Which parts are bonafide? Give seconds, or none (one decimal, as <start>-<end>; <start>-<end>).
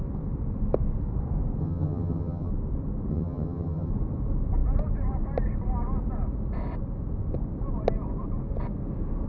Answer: 0.0-1.6; 2.5-3.1; 3.9-9.3